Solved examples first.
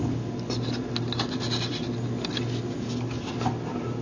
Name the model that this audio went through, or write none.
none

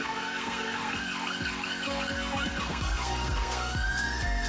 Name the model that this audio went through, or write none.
codec, SNAC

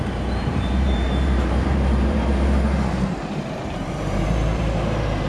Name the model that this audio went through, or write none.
vocoder, BigVGAN v2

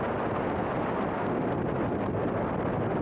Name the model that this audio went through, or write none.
none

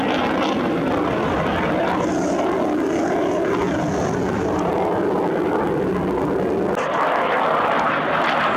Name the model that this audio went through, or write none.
none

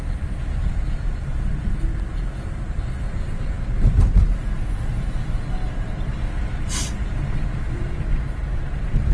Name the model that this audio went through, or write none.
none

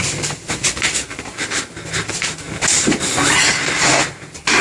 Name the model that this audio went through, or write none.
none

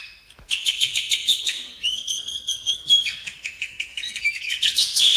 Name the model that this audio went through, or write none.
codec, SNAC